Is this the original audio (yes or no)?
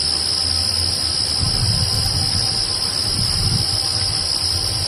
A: yes